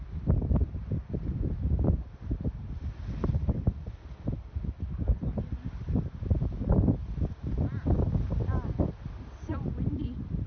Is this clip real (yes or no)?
yes